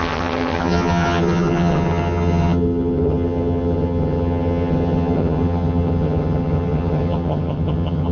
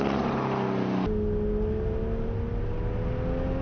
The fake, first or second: first